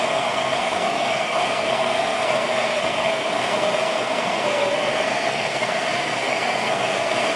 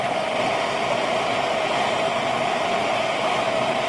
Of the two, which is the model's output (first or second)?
first